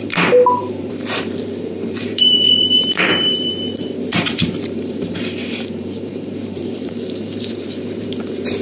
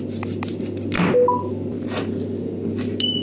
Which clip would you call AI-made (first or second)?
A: first